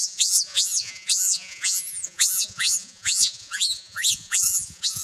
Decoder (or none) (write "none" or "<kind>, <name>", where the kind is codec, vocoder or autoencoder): vocoder, Vocos